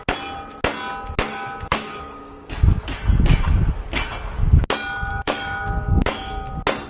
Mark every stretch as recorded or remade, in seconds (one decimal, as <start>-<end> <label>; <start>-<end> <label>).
0.0-1.3 recorded; 1.3-2.5 remade; 2.5-5.1 recorded; 5.1-6.5 remade; 6.5-6.9 recorded